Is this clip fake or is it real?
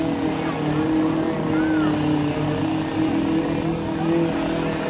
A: real